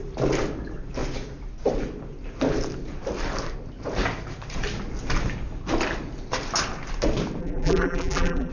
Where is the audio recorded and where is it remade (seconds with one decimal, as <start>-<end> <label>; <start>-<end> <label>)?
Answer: 0.0-7.4 recorded; 7.4-8.5 remade